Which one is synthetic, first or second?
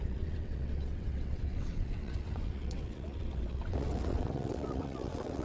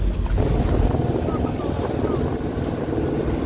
first